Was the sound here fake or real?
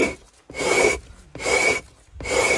real